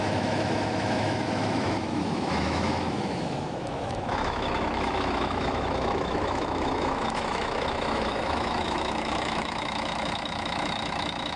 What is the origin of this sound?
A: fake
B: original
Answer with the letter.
A